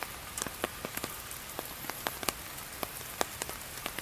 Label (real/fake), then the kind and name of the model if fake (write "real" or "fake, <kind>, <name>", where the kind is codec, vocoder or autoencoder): real